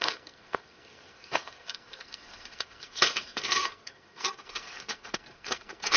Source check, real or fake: fake